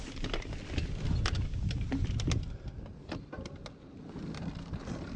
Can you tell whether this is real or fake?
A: real